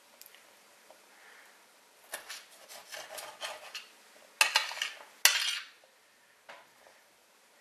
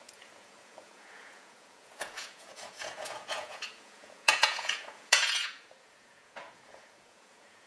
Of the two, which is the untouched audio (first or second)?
first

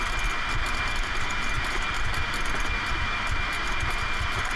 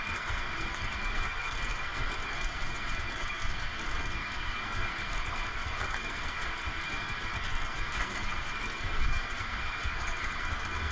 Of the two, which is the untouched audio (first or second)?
first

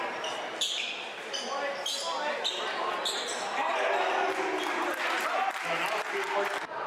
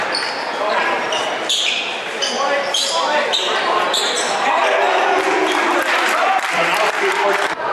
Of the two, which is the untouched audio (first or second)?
first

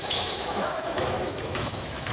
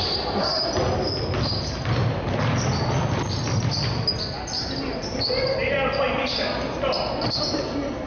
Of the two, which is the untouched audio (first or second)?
second